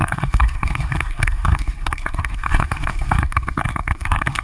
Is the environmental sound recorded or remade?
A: remade